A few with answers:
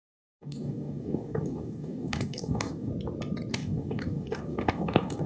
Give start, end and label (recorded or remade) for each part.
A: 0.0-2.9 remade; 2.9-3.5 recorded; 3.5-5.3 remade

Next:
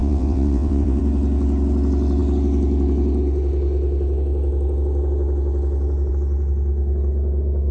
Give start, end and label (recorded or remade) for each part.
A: 0.0-1.0 remade; 1.0-7.7 recorded

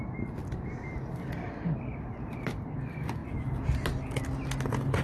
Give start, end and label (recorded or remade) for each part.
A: 0.0-5.0 recorded

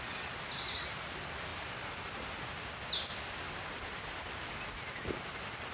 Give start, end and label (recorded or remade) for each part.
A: 0.0-5.7 recorded

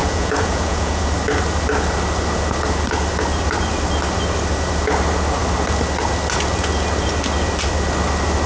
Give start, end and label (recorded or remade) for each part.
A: 0.0-1.0 remade; 1.0-8.5 recorded

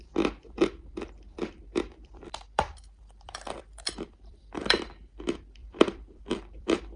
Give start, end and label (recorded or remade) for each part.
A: 0.0-7.0 remade